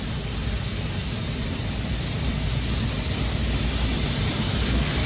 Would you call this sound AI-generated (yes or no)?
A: no